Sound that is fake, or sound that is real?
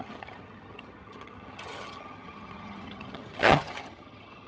fake